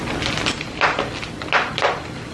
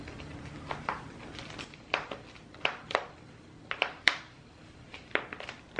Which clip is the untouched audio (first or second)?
first